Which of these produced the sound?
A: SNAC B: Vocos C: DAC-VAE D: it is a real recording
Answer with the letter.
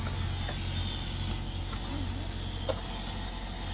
D